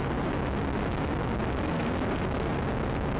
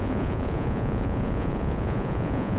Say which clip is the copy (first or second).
second